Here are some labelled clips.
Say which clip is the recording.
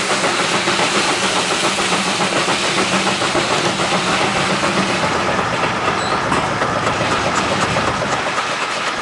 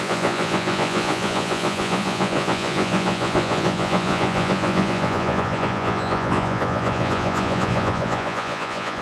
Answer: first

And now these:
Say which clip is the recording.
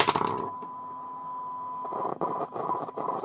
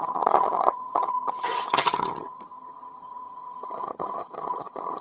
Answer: first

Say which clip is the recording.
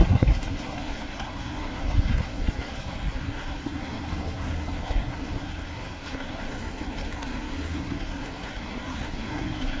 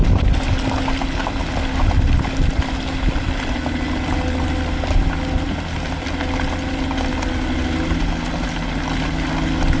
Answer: second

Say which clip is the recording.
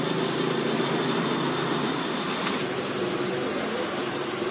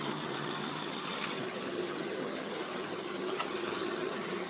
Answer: first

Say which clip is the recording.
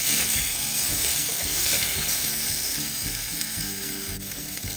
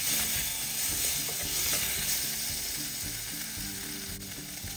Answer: second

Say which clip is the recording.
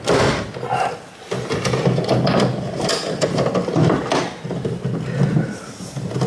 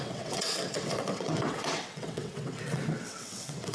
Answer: first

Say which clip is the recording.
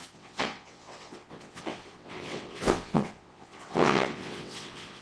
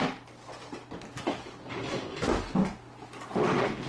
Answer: second